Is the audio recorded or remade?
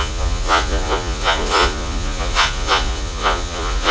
remade